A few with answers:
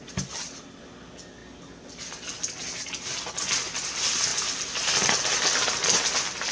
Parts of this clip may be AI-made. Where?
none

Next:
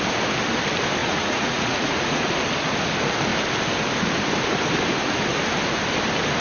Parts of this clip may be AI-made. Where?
1.0-2.3 (vocoder, Vocos)

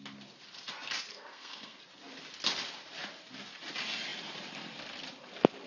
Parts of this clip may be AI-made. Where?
1.1-1.8 (codec, SNAC)

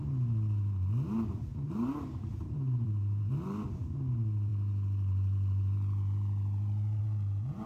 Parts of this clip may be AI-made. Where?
1.5-3.3 (vocoder, BigVGAN v2)

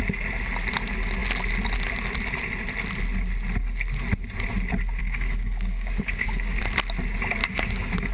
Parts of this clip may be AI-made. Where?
5.0-6.6 (codec, DAC); 7.4-8.1

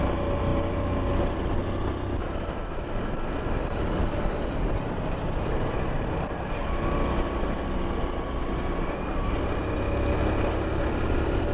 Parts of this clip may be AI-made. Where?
none

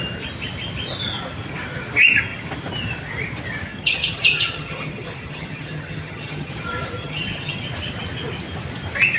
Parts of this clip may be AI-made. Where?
3.7-6.5 (vocoder, HiFi-GAN); 7.0-7.6